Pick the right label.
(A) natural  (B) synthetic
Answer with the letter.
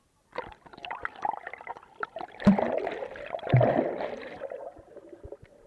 B